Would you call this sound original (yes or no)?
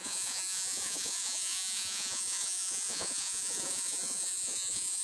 no